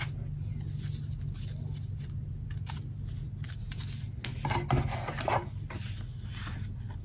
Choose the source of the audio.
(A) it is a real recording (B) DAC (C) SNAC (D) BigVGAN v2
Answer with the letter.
A